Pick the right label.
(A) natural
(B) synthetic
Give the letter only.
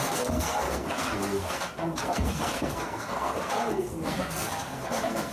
B